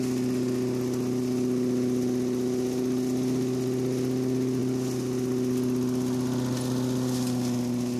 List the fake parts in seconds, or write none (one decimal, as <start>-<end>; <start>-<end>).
none